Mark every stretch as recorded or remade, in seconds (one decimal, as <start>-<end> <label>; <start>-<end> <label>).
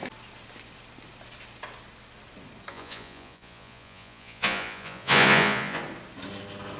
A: 0.0-2.7 recorded; 2.7-5.8 remade; 5.8-6.8 recorded